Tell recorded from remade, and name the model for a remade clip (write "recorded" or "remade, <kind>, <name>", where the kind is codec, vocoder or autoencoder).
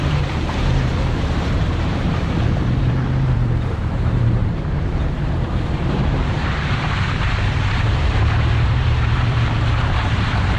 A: remade, vocoder, BigVGAN v2